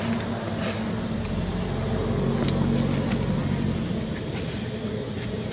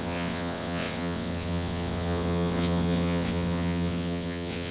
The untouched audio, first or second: first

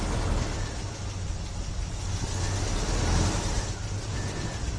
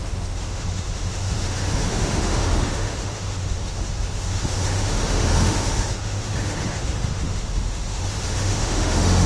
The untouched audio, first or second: first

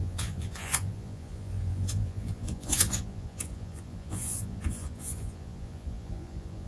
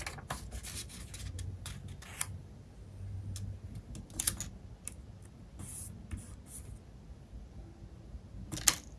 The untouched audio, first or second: second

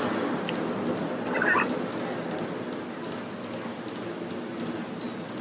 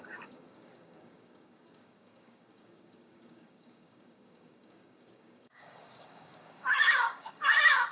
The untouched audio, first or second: first